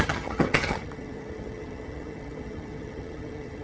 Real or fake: fake